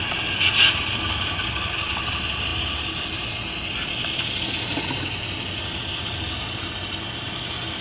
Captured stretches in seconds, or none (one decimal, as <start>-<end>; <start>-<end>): 0.0-7.8